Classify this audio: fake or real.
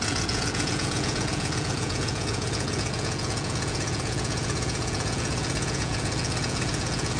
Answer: fake